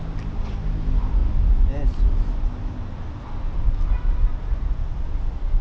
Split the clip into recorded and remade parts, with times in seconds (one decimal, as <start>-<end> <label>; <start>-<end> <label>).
0.0-5.6 recorded

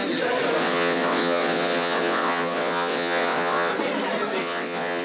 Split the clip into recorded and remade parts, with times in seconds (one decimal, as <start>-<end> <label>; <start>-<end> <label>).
0.0-0.6 recorded; 0.6-3.7 remade; 3.7-4.4 recorded; 4.4-5.0 remade

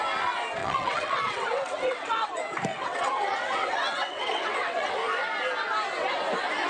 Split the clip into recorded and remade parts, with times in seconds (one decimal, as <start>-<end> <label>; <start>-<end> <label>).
0.0-0.6 recorded; 0.6-2.3 remade; 2.3-2.7 recorded; 2.7-4.9 remade; 4.9-6.7 recorded

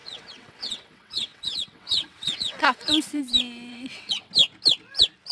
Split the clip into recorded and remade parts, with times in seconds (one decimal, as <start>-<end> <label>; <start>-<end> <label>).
0.0-3.2 remade; 3.2-3.7 recorded; 3.7-4.3 remade; 4.3-5.3 recorded